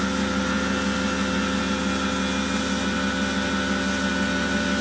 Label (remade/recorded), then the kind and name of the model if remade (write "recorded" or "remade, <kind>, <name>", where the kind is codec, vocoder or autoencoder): recorded